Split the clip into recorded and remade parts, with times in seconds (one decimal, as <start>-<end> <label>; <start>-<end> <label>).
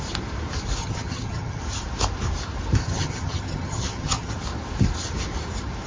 0.0-0.8 recorded; 0.8-1.6 remade; 1.6-2.8 recorded; 2.8-4.3 remade; 4.3-5.9 recorded